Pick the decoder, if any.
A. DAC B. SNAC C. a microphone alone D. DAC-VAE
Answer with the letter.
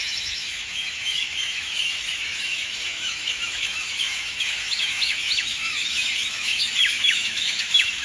D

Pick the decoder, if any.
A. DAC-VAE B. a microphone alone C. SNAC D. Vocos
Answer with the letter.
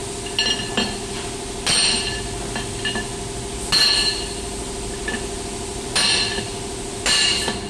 B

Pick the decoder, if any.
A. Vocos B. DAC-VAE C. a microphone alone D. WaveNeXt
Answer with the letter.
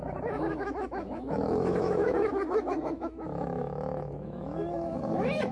B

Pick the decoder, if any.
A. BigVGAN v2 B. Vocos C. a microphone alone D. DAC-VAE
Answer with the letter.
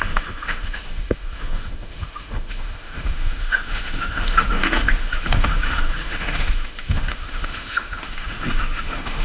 D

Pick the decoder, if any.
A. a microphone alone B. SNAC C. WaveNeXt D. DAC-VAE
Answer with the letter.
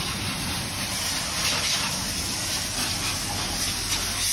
A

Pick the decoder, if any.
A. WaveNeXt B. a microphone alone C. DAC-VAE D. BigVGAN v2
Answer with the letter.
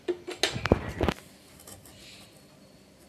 B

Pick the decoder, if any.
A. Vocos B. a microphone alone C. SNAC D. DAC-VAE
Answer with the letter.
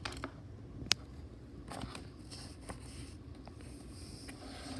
B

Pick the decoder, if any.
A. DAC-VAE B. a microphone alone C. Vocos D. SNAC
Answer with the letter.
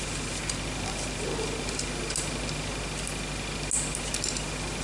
B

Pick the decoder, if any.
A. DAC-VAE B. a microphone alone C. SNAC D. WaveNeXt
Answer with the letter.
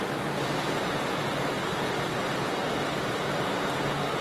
B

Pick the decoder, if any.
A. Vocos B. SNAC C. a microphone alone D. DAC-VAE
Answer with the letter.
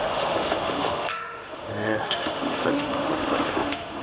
D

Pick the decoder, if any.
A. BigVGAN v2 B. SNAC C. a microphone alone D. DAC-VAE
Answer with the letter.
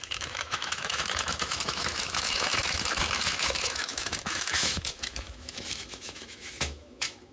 D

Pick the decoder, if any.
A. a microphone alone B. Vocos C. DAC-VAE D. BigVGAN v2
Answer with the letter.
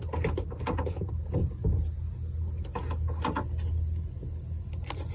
A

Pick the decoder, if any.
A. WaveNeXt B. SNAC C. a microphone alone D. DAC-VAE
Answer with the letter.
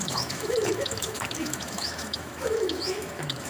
D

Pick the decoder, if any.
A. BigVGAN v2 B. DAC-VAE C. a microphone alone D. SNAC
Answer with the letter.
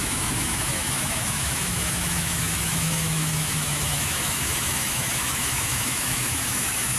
B